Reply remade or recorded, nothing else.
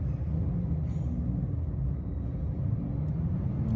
recorded